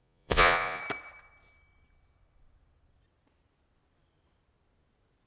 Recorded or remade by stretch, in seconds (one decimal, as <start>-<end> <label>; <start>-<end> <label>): 0.0-0.8 remade; 0.8-5.3 recorded